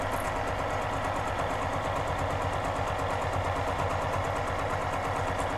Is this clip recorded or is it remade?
recorded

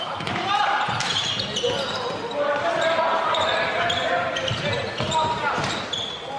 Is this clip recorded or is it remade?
remade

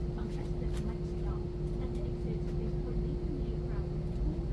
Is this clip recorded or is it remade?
recorded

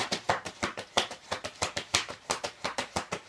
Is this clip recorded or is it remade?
remade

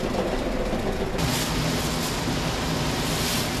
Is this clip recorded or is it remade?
recorded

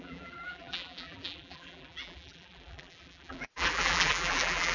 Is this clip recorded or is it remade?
remade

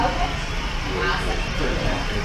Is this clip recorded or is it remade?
remade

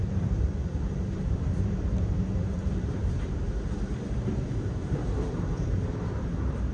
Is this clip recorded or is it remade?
remade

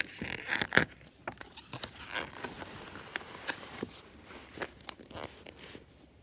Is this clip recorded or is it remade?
remade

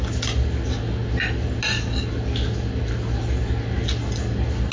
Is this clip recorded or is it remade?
recorded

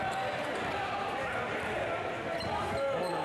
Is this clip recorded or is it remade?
remade